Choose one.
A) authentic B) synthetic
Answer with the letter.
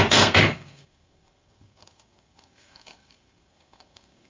B